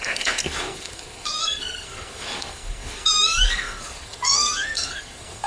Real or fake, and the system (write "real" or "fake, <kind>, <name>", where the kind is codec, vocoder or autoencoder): fake, codec, SNAC